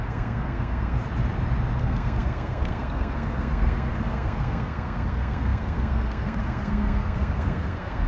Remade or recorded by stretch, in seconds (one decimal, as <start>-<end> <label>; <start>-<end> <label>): 0.0-1.0 remade; 1.0-1.8 recorded; 1.8-8.1 remade